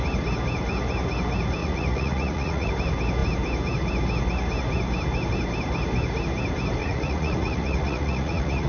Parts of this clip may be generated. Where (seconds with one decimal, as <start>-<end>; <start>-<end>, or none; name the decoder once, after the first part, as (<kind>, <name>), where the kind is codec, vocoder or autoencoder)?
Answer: 1.6-2.7 (vocoder, Vocos); 6.8-8.7